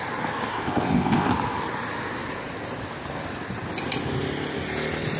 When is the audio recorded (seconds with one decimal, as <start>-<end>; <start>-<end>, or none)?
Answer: 0.0-0.5; 1.3-5.2